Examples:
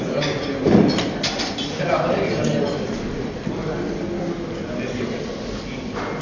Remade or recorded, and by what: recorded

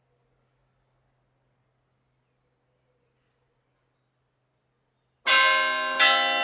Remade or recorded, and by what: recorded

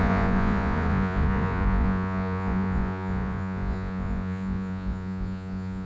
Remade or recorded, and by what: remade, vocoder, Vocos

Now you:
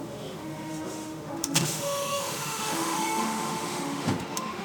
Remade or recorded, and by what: remade, autoencoder, DAC-VAE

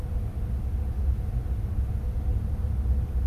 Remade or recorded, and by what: recorded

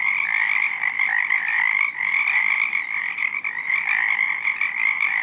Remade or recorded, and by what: recorded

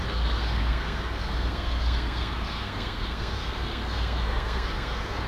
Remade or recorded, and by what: remade, codec, SNAC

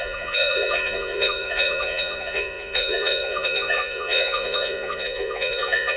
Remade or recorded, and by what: remade, vocoder, Vocos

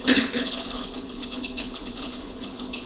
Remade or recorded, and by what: remade, codec, HILCodec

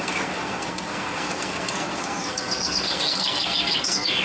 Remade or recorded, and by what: remade, codec, SNAC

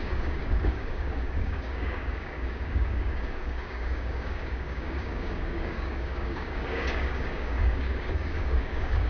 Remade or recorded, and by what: remade, codec, DAC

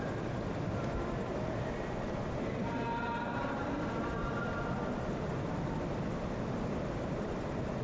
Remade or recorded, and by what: recorded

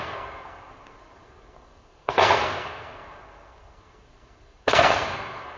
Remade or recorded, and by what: remade, codec, SNAC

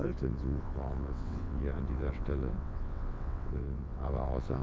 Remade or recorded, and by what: remade, vocoder, WaveNeXt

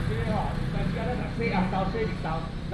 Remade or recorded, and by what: recorded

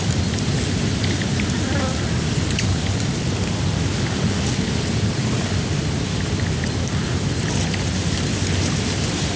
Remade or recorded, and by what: recorded